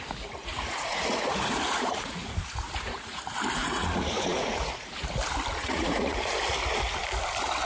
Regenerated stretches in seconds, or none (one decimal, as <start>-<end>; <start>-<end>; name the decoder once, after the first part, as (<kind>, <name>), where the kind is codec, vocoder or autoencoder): 0.4-3.2 (vocoder, Vocos); 3.6-4.9; 5.6-6.3